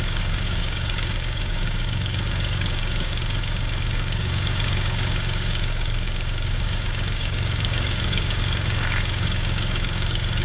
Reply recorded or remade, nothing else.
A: remade